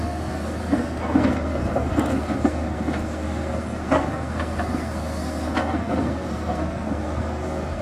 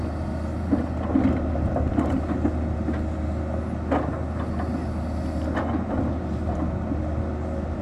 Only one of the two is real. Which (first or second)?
second